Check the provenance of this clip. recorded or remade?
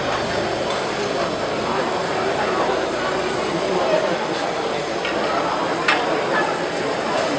recorded